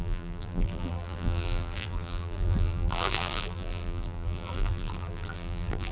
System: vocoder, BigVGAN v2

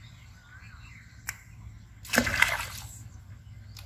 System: none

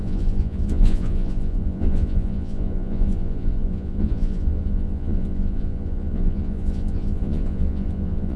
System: vocoder, Vocos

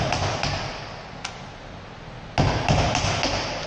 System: none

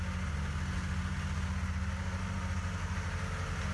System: none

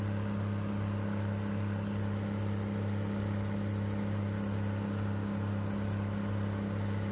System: none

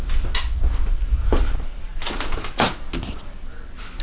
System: none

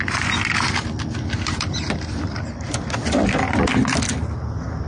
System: none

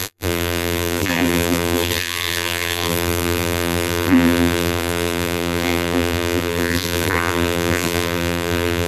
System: vocoder, BigVGAN v2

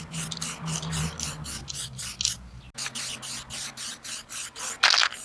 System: none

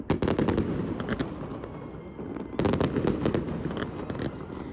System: none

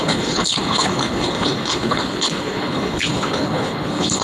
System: codec, HILCodec